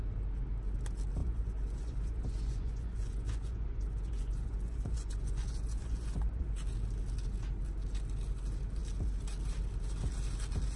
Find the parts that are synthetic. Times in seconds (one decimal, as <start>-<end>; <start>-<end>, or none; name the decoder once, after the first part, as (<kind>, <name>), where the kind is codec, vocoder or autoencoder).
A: 1.2-6.4 (vocoder, Vocos)